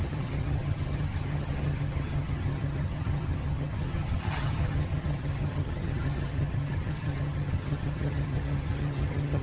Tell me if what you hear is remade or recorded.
remade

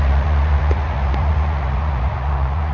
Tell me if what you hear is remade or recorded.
remade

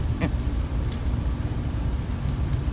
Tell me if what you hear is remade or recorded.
remade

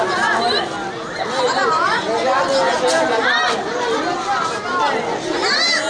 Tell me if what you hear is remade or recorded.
recorded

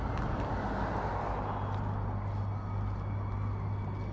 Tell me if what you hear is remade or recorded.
recorded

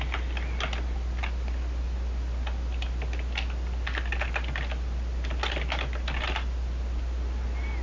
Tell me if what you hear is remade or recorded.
recorded